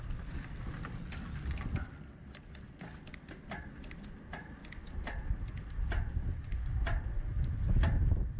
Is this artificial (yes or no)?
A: no